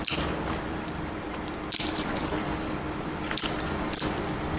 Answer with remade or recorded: remade